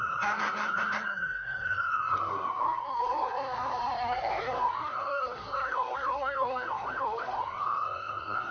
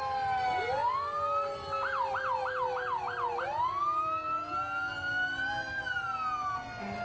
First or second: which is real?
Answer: second